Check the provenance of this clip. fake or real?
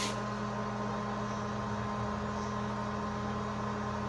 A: real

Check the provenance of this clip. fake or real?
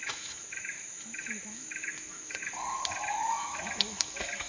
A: fake